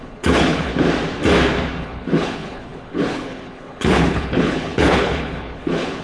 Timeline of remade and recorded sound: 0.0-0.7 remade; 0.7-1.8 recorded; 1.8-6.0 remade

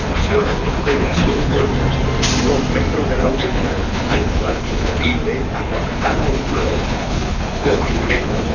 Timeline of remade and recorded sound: 0.0-1.6 remade; 1.6-3.2 recorded; 3.2-5.1 remade; 5.1-5.6 recorded; 5.6-8.5 remade

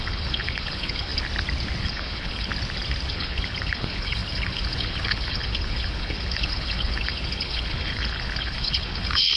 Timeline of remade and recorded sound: 0.0-1.1 remade; 1.1-1.8 recorded; 1.8-2.5 remade; 2.5-3.1 recorded; 3.1-9.4 remade